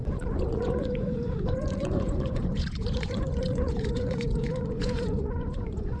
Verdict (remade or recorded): remade